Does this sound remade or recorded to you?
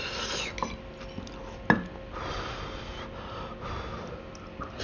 recorded